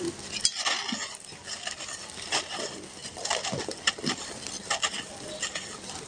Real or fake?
real